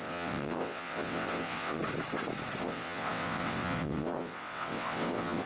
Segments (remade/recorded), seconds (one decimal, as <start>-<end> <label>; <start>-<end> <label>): 0.0-1.8 remade; 1.8-2.6 recorded; 2.6-5.5 remade